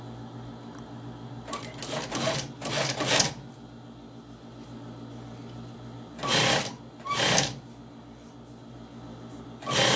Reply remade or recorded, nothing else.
recorded